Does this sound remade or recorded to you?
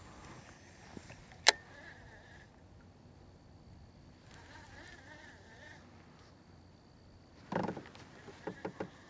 recorded